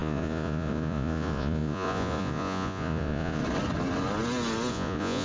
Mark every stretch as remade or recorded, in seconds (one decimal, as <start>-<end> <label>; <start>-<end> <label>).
0.0-3.4 remade; 3.4-4.7 recorded; 4.7-5.2 remade